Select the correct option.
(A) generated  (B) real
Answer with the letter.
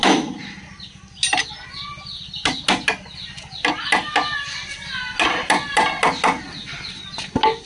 B